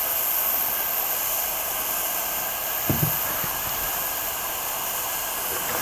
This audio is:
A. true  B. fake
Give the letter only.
A